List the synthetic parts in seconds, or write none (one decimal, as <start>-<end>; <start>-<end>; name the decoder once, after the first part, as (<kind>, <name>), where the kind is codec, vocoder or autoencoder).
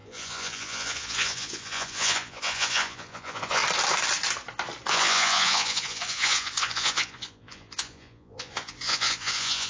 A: 0.0-3.6 (vocoder, Vocos); 4.9-9.7